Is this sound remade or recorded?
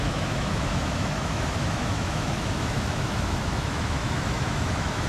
remade